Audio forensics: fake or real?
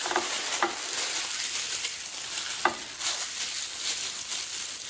real